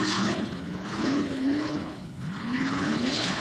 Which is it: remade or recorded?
remade